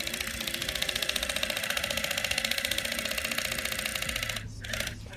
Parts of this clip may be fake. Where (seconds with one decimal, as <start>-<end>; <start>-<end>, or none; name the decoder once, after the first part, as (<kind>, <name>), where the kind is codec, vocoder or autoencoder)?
0.6-3.1 (vocoder, BigVGAN v2)

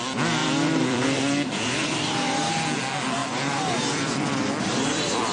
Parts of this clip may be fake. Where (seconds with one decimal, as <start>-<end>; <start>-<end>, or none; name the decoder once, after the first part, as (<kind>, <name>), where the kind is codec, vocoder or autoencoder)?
0.4-2.5 (vocoder, BigVGAN v2)

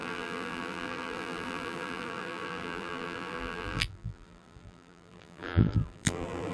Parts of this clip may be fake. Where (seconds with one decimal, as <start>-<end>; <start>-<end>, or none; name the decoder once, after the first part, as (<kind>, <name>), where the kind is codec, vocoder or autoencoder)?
0.0-6.5 (vocoder, BigVGAN v2)

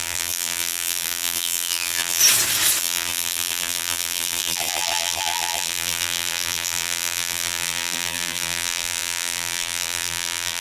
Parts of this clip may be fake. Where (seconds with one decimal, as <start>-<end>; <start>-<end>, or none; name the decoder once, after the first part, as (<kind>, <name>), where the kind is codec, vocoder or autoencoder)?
0.0-2.2 (vocoder, BigVGAN v2); 2.8-10.6